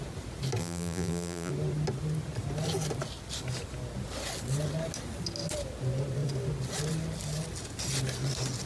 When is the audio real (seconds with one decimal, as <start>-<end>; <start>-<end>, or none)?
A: 0.0-0.6; 1.5-8.7